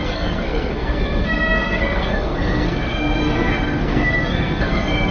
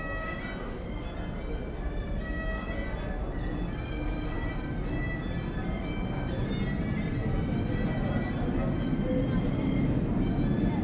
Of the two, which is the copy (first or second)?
first